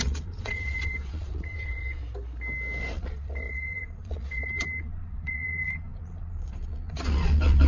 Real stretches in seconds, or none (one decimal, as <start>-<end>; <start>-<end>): 2.0-2.8